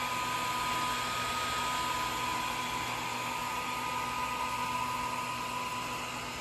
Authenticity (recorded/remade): recorded